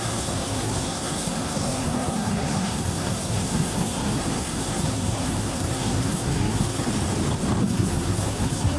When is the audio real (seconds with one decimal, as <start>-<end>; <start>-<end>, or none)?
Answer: 6.9-7.6